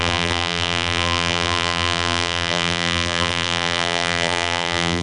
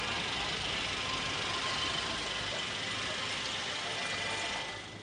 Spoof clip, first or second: first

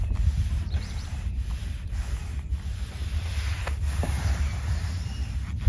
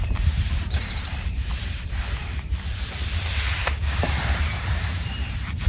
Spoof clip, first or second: second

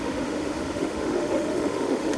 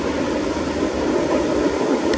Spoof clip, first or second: first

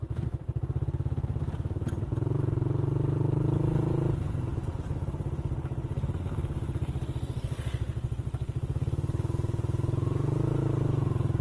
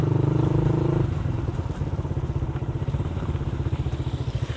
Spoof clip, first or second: second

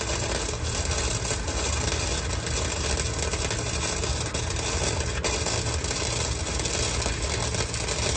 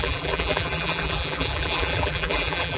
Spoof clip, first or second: second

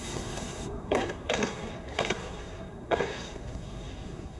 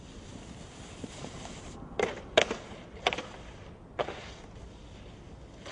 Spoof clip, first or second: first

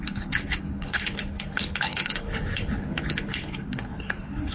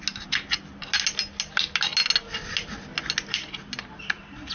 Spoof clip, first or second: first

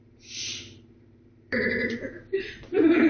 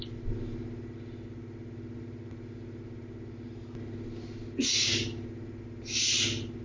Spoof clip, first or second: first